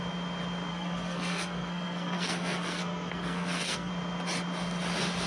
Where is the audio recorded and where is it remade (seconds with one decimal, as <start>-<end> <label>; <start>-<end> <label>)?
0.0-0.7 recorded; 0.7-3.9 remade; 3.9-5.3 recorded